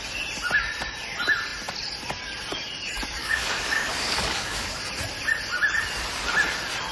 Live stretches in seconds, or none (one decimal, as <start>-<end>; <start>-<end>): 0.0-3.2; 4.8-6.9